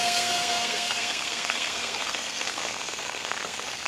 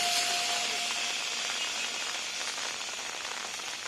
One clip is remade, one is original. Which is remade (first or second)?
first